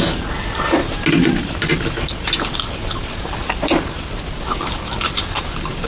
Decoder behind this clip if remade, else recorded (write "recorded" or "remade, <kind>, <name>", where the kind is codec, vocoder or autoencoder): recorded